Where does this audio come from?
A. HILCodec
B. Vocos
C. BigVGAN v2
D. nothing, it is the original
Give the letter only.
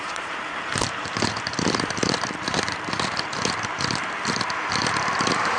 C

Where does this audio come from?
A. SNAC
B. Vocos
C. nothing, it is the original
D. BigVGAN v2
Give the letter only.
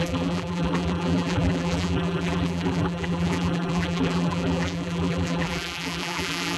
D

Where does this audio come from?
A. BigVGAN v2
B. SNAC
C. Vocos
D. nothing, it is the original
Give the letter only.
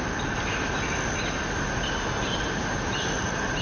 A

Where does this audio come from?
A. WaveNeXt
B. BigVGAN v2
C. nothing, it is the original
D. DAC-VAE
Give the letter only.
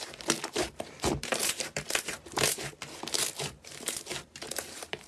B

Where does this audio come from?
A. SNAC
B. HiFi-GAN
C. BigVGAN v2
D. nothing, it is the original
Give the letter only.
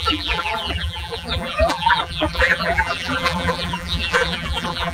C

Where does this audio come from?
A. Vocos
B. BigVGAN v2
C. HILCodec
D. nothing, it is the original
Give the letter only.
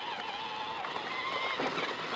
D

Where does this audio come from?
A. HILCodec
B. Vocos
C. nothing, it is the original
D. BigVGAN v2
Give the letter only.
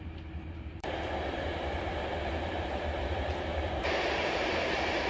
D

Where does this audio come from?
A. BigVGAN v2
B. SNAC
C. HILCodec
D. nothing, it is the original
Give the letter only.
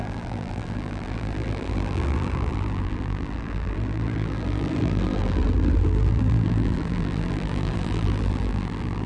A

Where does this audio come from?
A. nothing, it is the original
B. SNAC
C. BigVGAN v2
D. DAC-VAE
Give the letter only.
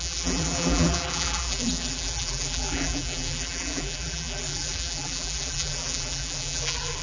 C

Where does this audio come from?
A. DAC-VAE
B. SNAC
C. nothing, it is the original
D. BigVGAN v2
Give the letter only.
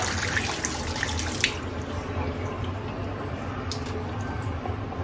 C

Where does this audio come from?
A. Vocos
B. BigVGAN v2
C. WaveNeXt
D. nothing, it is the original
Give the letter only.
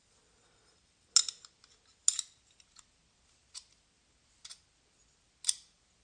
D